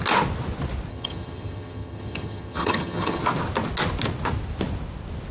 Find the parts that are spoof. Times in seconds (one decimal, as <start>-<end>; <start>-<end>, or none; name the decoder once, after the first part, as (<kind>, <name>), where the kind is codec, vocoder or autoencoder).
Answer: 0.9-3.2 (vocoder, HiFi-GAN)